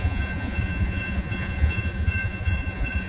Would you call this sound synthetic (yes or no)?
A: yes